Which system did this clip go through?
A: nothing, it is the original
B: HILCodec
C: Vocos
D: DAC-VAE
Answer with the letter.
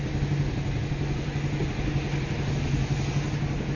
A